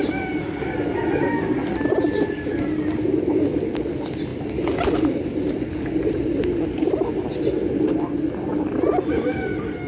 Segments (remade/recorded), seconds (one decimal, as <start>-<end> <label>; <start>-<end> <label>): 0.0-9.9 recorded